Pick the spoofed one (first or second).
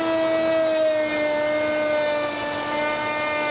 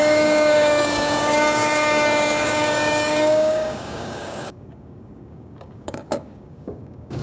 second